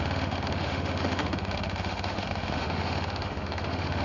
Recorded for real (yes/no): no